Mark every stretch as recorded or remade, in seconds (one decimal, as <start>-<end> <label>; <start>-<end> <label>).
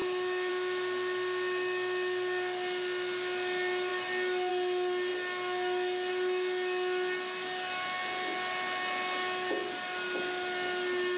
0.0-0.5 remade; 0.5-11.2 recorded